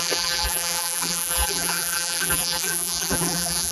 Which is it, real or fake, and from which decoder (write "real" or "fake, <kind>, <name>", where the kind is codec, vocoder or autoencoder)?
fake, vocoder, BigVGAN v2